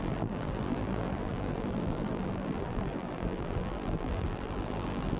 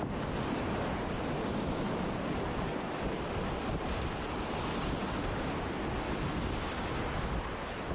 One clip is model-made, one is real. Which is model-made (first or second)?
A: first